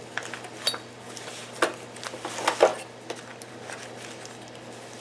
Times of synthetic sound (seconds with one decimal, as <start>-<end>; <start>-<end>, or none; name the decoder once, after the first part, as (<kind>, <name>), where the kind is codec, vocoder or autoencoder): none